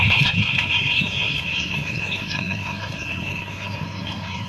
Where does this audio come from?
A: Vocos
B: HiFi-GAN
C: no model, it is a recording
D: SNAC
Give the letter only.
D